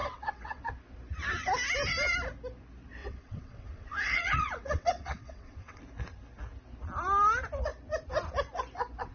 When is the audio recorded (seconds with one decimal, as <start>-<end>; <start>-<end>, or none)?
0.6-3.0; 5.8-9.1